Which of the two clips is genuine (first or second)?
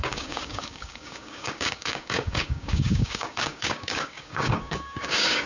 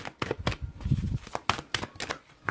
second